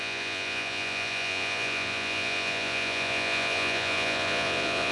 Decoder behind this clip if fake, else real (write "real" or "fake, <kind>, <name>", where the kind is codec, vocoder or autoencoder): fake, vocoder, Vocos